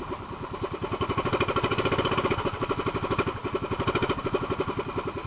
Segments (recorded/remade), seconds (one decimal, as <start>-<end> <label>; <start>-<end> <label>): 0.0-5.3 remade